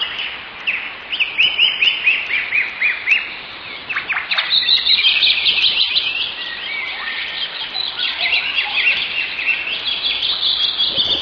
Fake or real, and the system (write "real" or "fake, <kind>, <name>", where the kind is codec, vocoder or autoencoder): real